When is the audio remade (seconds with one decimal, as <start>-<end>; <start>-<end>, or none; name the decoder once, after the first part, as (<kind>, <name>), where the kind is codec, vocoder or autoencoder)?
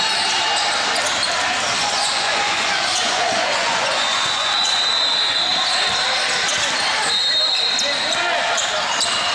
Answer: 1.8-4.7 (vocoder, Vocos)